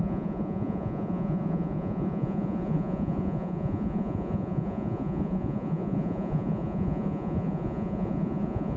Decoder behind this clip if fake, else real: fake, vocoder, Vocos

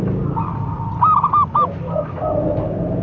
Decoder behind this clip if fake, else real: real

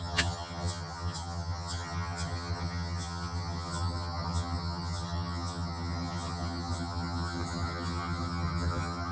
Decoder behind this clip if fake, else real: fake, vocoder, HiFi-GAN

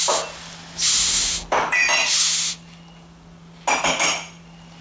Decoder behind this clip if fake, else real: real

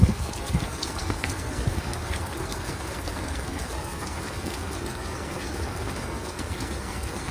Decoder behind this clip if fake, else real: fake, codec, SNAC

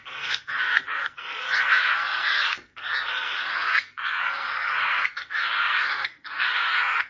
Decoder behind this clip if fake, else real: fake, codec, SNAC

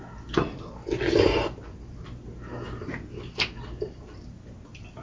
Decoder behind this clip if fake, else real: real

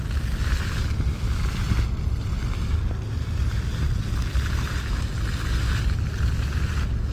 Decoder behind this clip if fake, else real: real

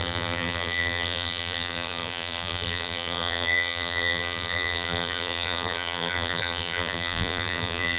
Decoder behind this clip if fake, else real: fake, vocoder, BigVGAN v2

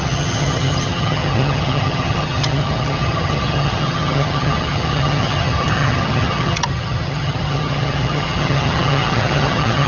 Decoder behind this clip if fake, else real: fake, vocoder, HiFi-GAN